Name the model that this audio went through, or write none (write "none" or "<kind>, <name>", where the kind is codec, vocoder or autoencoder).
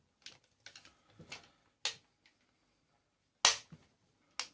none